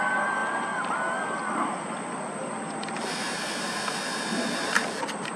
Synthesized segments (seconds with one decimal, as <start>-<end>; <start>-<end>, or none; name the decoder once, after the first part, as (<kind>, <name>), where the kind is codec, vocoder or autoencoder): none